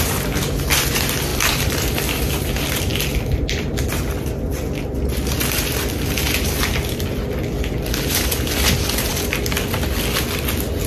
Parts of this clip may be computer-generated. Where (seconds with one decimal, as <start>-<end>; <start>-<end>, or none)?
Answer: 1.3-1.9; 2.9-3.7

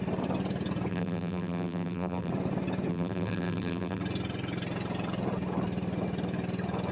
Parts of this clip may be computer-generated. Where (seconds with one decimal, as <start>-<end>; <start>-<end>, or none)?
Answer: 0.9-2.3; 2.9-4.0

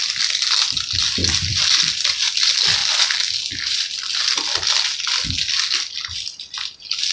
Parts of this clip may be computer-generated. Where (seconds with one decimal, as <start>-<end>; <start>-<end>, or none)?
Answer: none

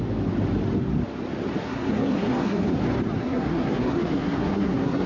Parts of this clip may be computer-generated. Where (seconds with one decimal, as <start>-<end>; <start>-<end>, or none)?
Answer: 1.6-2.8; 3.2-5.1

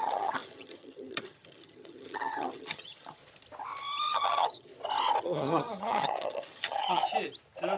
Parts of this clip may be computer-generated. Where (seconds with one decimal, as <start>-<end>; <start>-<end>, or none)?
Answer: 0.0-3.2; 4.1-4.7; 5.2-7.0